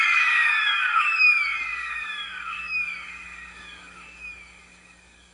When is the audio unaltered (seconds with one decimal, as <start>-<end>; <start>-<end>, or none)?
none